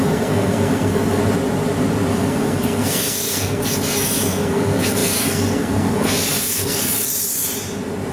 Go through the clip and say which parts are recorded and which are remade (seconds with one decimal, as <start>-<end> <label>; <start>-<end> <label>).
0.0-1.2 remade; 1.2-2.1 recorded; 2.1-7.1 remade; 7.1-8.1 recorded